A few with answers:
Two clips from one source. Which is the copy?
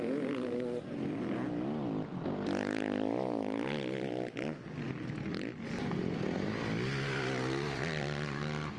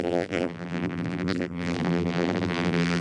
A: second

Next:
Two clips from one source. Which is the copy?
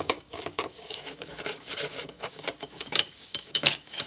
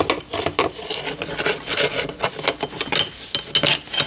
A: first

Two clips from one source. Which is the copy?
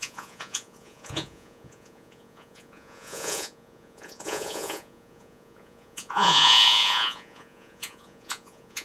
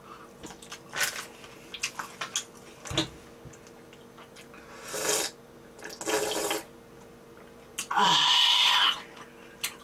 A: first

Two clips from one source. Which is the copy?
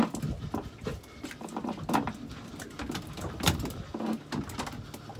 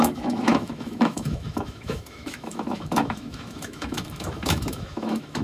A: second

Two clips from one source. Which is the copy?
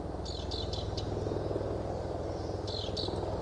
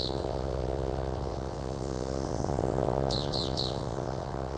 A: second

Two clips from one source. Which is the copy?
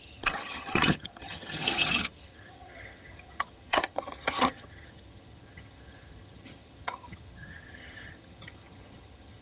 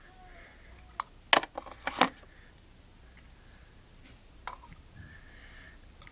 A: first